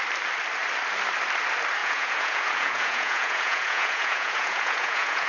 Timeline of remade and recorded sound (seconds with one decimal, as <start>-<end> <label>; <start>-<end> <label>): 0.0-1.8 recorded; 1.8-5.3 remade